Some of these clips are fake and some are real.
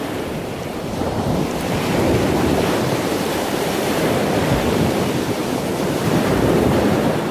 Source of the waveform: fake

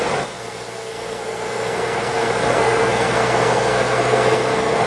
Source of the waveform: fake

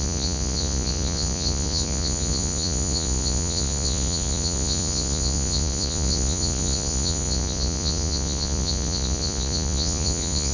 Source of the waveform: fake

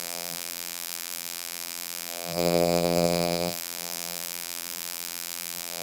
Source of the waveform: fake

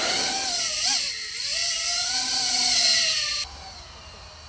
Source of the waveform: real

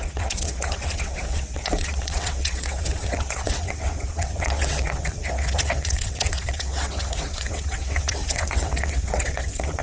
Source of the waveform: fake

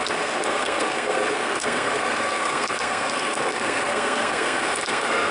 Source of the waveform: fake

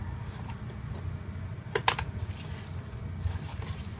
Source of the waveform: real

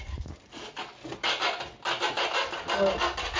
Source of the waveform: real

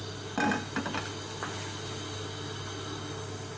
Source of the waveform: real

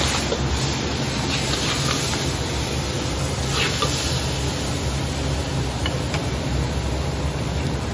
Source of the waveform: real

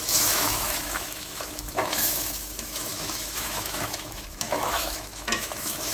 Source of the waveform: fake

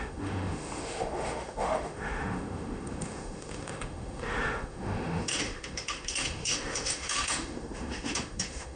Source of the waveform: fake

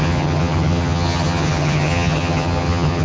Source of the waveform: fake